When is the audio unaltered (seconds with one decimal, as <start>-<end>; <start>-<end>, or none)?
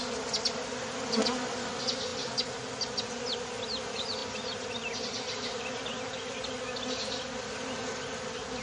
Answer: 0.0-8.6